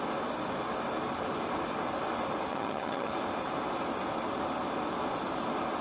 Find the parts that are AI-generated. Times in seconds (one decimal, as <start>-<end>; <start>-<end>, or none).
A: 2.5-3.1